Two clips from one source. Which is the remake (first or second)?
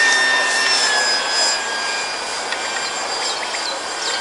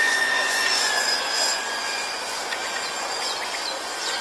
second